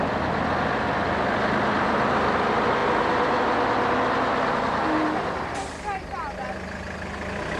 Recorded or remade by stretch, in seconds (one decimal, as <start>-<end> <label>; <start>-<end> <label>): 0.0-7.6 recorded

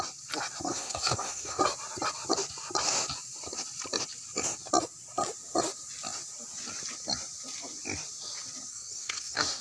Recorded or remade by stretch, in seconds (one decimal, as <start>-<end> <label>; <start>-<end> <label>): 0.0-0.7 recorded; 0.7-1.6 remade; 1.6-8.7 recorded; 8.7-9.6 remade